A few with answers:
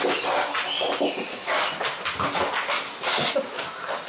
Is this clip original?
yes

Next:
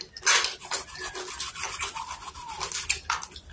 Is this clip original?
yes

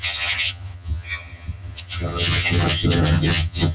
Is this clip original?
no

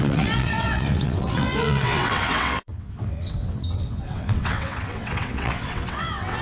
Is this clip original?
no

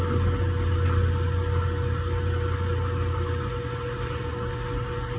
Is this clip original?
yes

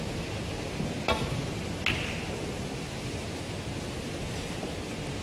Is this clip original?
yes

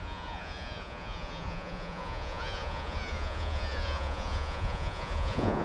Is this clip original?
no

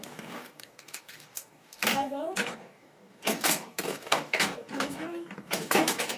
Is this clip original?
no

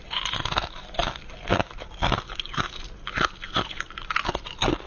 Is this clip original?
yes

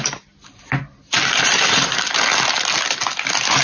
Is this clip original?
yes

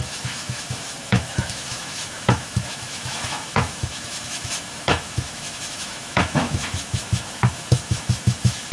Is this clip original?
no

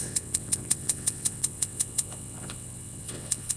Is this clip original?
no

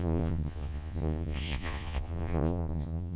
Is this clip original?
no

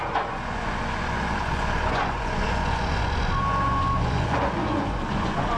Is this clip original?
no